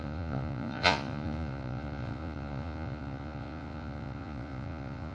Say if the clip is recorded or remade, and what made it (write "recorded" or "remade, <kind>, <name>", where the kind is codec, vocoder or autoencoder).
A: remade, vocoder, Vocos